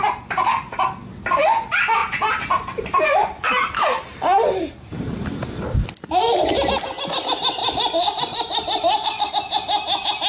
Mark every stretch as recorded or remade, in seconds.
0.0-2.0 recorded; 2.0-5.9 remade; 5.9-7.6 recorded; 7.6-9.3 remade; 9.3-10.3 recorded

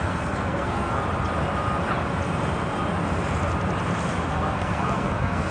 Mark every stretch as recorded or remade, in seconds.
0.0-1.0 remade; 1.0-4.3 recorded; 4.3-5.5 remade

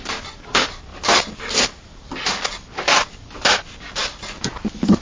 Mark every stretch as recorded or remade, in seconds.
0.0-5.0 recorded

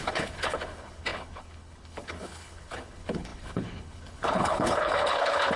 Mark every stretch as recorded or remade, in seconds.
0.0-5.6 remade

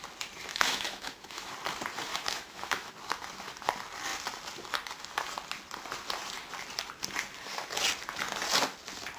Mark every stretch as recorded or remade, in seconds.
0.0-0.5 recorded; 0.5-1.5 remade; 1.5-2.1 recorded; 2.1-2.9 remade; 2.9-9.2 recorded

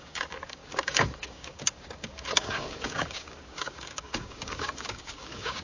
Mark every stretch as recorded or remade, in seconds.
0.0-5.6 remade

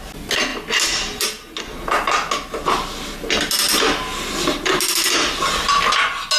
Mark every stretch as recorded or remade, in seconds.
0.0-6.4 recorded